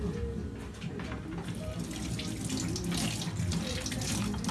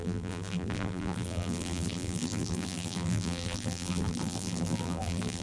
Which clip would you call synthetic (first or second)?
second